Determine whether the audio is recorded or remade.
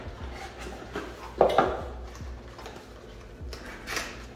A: recorded